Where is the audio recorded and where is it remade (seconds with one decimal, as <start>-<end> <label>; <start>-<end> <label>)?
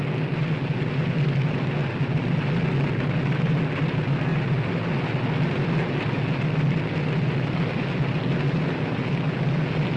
0.0-10.0 recorded